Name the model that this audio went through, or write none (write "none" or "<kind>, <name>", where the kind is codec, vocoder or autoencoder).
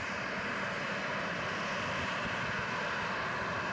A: none